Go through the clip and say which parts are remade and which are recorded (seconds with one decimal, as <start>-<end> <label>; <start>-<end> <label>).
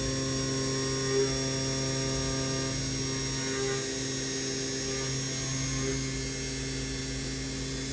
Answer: 0.0-7.9 recorded